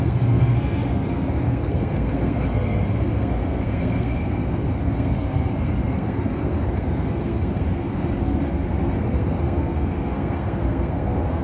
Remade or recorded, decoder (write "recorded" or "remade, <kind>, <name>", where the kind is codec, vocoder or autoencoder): remade, codec, SNAC